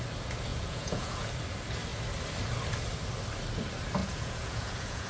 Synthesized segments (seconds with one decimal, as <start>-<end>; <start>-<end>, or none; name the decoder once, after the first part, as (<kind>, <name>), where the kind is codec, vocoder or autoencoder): 0.5-1.3 (vocoder, Vocos); 4.0-5.1